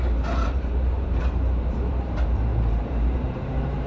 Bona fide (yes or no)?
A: no